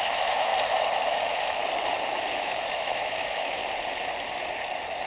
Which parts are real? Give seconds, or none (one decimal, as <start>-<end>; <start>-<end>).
0.5-1.0; 1.6-2.4; 3.6-5.1